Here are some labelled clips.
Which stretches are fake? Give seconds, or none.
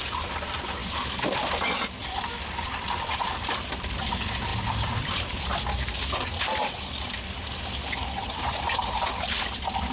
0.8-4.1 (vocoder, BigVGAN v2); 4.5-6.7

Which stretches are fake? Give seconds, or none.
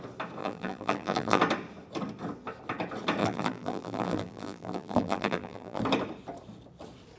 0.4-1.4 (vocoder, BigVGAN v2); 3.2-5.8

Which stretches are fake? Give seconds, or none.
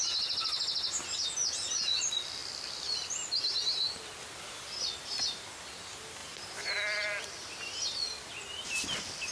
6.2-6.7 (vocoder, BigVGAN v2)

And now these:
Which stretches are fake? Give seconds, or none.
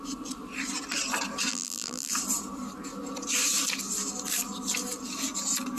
1.5-2.1 (vocoder, BigVGAN v2)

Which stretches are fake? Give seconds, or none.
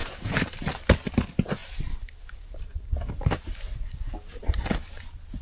0.0-0.8 (vocoder, BigVGAN v2); 1.6-3.9; 4.4-5.0